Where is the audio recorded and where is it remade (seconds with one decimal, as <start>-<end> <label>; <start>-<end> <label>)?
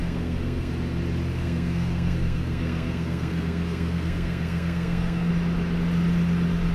0.0-0.7 remade; 0.7-1.3 recorded; 1.3-5.3 remade; 5.3-6.7 recorded